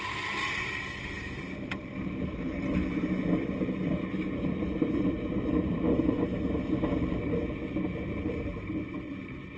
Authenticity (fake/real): fake